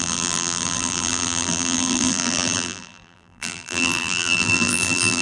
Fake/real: fake